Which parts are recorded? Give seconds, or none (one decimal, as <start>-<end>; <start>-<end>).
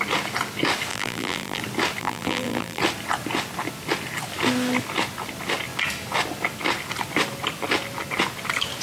0.0-0.9; 1.6-2.0; 2.8-8.8